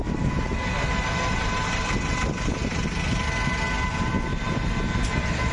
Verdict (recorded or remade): recorded